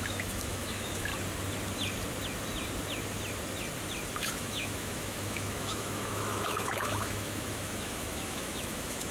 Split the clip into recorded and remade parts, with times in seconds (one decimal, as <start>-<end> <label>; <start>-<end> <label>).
0.0-1.1 remade; 1.1-4.2 recorded; 4.2-9.1 remade